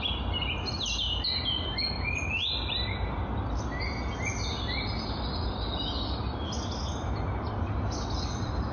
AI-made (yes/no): no